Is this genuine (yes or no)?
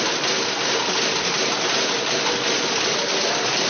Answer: yes